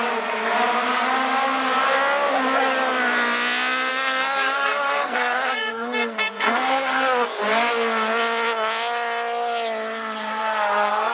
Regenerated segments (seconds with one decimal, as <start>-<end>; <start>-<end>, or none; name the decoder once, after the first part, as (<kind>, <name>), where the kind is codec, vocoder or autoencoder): 3.9-7.4 (codec, SNAC)